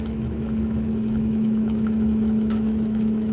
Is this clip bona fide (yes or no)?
no